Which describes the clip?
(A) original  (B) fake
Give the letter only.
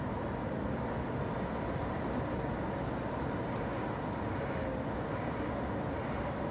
A